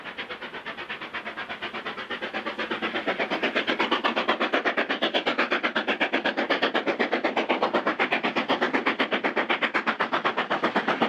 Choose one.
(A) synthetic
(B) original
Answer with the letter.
B